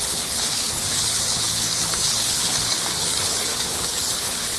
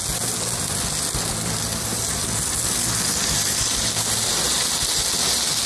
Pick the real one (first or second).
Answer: second